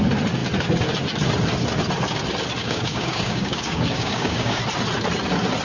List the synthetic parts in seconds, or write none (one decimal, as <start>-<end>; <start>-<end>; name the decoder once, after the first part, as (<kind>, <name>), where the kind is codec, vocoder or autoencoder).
2.6-4.6 (codec, DAC)